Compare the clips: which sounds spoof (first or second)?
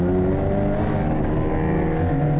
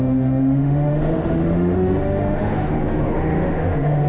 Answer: second